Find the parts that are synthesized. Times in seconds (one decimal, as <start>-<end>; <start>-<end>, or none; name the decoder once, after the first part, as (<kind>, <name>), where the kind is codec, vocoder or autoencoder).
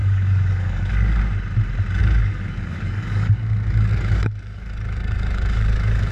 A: 0.0-1.2 (codec, DAC); 2.0-6.1